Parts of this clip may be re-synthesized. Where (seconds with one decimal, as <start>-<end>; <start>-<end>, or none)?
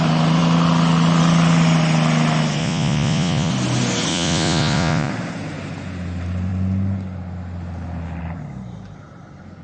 2.6-3.5; 4.1-5.1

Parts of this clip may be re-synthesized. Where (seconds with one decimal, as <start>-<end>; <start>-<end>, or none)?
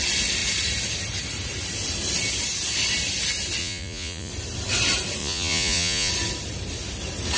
3.6-4.3; 5.2-6.1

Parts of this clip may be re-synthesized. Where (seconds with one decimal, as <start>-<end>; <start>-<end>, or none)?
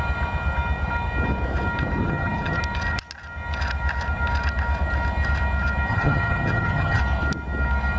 2.0-2.6; 5.9-7.0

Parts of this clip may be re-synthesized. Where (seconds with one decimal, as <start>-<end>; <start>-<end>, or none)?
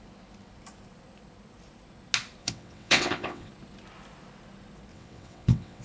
2.4-3.5; 4.9-5.8